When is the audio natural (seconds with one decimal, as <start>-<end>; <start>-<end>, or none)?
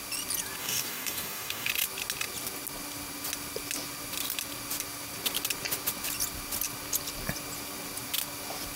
0.0-0.6; 1.7-8.8